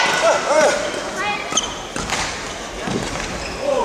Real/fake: real